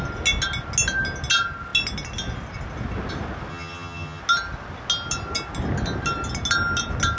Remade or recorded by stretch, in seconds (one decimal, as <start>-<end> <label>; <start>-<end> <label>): 0.0-3.5 recorded; 3.5-4.2 remade; 4.2-7.2 recorded